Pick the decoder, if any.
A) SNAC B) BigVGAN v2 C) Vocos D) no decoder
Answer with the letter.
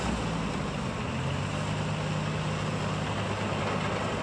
D